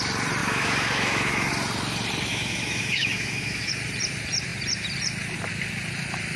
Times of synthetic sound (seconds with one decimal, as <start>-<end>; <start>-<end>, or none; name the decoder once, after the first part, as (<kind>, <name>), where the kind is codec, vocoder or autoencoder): 0.4-1.5 (autoencoder, DAC-VAE); 2.3-3.7